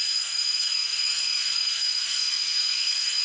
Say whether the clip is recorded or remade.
remade